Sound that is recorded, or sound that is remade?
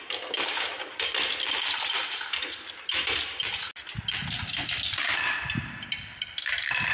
recorded